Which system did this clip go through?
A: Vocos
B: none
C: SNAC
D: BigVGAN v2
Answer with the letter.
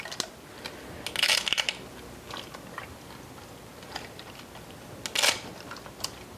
B